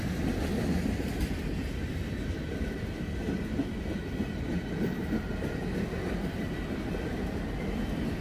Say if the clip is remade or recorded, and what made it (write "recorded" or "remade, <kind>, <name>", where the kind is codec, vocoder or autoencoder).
recorded